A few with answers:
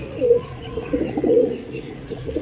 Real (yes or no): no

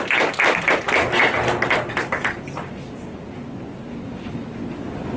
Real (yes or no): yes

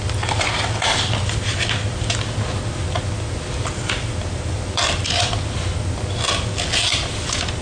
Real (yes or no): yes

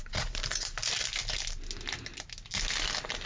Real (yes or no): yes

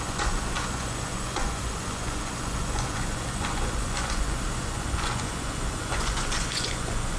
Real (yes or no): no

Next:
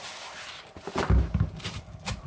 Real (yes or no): yes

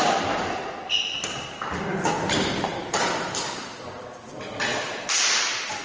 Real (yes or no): yes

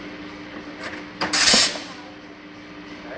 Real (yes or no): yes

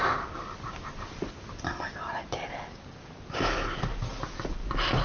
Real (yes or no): yes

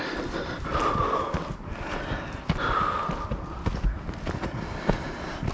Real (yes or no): yes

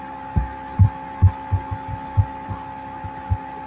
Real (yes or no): yes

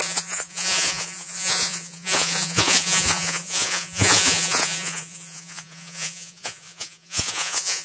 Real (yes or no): no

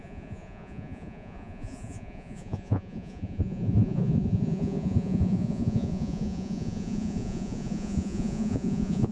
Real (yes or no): no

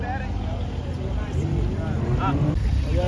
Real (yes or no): yes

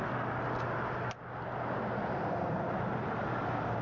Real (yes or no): yes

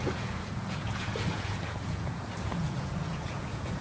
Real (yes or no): no